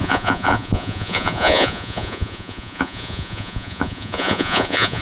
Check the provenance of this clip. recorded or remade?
remade